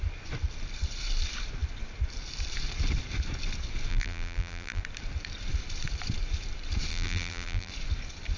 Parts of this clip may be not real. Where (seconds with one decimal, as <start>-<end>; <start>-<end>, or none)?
3.9-4.8; 6.9-7.7